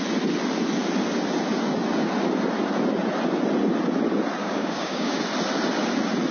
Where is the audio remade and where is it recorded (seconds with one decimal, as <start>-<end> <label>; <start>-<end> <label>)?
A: 0.0-4.4 recorded; 4.4-5.2 remade; 5.2-6.3 recorded